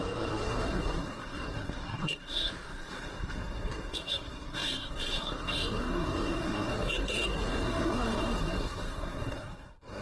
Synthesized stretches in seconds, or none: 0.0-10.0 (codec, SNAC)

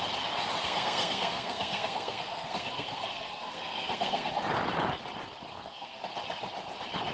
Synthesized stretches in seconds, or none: 0.6-4.3 (codec, SNAC); 5.5-6.0

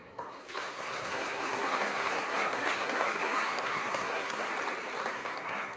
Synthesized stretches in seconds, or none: 0.0-4.5 (codec, SNAC); 5.1-5.8

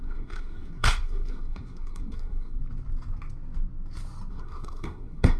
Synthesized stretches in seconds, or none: 0.0-2.6 (codec, SNAC); 4.3-5.4

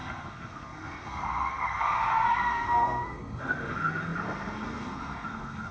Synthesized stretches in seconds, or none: 0.0-5.7 (codec, SNAC)

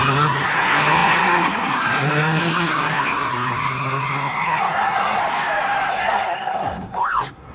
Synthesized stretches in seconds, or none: 0.0-5.2 (codec, SNAC); 5.9-7.5

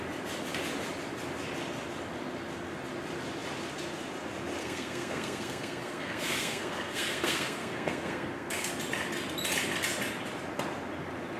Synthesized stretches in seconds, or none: 4.6-8.7 (codec, SNAC)